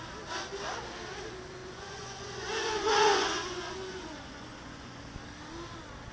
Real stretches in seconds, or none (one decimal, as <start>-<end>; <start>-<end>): 0.0-1.6; 5.0-6.1